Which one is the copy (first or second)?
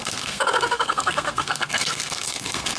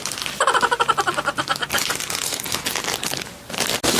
first